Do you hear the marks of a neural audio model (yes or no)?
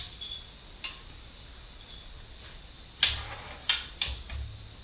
no